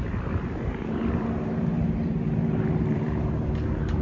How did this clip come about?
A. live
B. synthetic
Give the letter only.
B